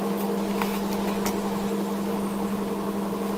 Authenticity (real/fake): real